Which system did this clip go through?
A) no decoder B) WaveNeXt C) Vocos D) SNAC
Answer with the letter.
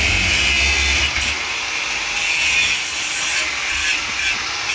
A